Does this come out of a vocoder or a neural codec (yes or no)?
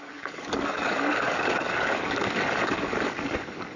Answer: yes